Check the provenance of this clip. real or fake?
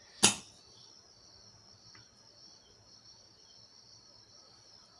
real